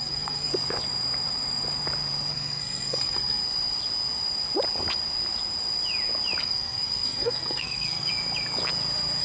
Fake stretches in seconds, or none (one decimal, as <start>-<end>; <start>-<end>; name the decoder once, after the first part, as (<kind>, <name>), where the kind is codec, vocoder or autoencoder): 0.0-0.5 (codec, SNAC); 2.3-3.4; 6.4-8.1